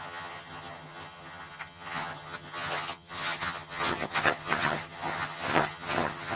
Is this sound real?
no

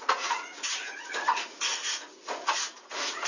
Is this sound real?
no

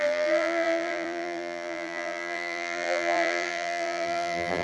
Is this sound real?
no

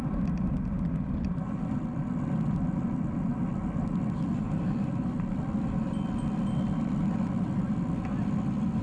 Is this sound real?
yes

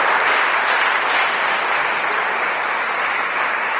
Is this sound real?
no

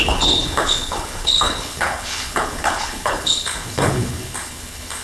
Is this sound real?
no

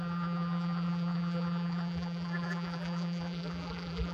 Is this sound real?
no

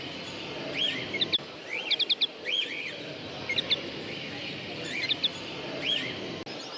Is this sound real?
yes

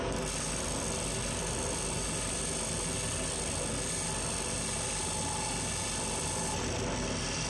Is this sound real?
yes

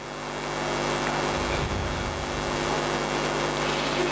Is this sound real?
yes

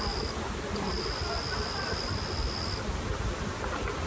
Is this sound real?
yes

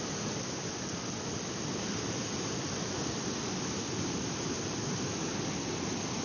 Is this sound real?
yes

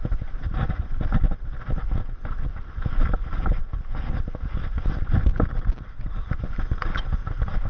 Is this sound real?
yes